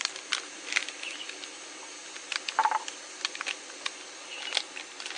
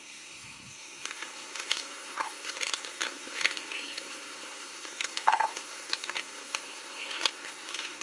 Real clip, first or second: first